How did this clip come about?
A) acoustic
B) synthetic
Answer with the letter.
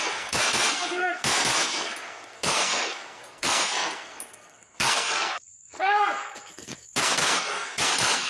B